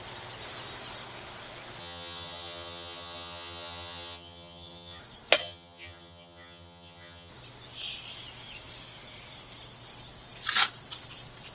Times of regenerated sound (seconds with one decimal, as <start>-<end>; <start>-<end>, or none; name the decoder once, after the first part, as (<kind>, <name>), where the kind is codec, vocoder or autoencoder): 1.8-5.0 (vocoder, HiFi-GAN); 5.4-7.3